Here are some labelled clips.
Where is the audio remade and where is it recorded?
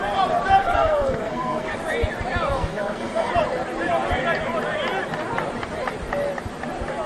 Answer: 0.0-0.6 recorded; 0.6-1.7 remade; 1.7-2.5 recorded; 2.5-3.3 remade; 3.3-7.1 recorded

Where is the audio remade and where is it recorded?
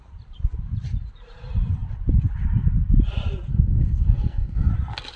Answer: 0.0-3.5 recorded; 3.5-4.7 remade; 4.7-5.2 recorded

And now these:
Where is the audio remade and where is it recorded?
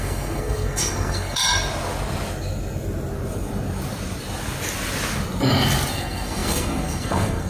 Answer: 0.0-1.4 remade; 1.4-5.9 recorded; 5.9-7.5 remade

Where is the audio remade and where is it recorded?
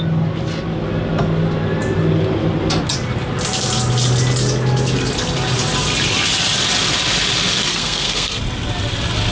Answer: 0.0-7.7 recorded; 7.7-8.4 remade; 8.4-9.3 recorded